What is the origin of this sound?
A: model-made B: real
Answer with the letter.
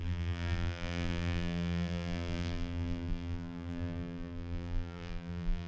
A